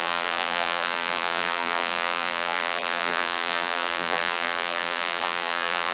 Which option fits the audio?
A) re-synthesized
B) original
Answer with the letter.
A